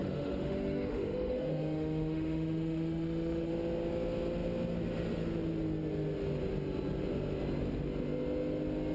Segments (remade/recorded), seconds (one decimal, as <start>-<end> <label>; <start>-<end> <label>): 0.0-3.5 remade; 3.5-8.9 recorded